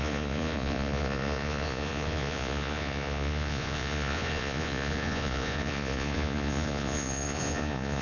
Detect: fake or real fake